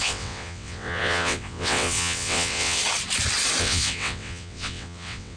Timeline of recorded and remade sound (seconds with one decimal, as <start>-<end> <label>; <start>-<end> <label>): 0.0-2.8 remade; 2.8-3.6 recorded; 3.6-5.4 remade

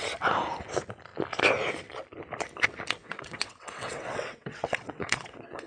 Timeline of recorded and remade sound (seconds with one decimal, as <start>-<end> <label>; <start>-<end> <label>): 0.0-3.0 recorded; 3.0-5.7 remade

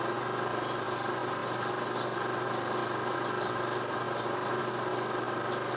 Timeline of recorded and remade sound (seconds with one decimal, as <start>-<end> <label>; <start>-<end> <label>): 0.0-5.8 recorded

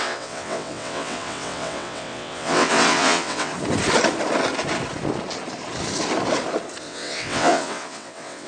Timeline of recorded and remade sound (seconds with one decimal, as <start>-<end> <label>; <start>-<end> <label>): 0.0-3.5 remade; 3.5-6.8 recorded; 6.8-8.5 remade

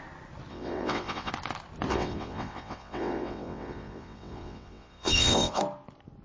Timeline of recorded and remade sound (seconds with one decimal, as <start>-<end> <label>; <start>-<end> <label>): 0.0-0.5 recorded; 0.5-1.3 remade; 1.3-1.9 recorded; 1.9-5.6 remade; 5.6-6.2 recorded

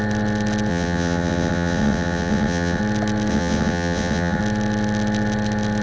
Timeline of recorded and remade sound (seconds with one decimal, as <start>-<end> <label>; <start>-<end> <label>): 0.0-0.7 recorded; 0.7-2.8 remade; 2.8-3.3 recorded; 3.3-4.4 remade; 4.4-5.8 recorded

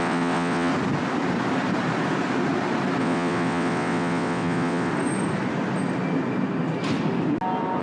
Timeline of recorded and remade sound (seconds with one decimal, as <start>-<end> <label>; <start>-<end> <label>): 0.0-0.7 remade; 0.7-3.0 recorded; 3.0-4.9 remade; 4.9-7.8 recorded

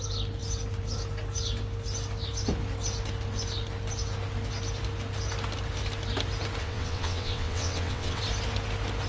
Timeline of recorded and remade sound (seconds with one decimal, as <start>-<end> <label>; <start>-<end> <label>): 0.0-6.6 recorded; 6.6-8.2 remade; 8.2-9.1 recorded